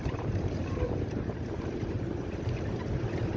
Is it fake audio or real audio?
fake